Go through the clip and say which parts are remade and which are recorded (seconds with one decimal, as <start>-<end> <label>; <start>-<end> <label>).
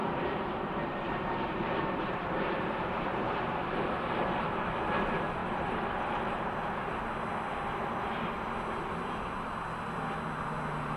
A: 0.0-3.8 remade; 3.8-5.4 recorded; 5.4-6.5 remade; 6.5-11.0 recorded